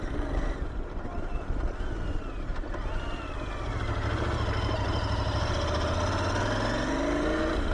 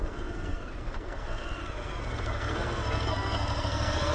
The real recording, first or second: first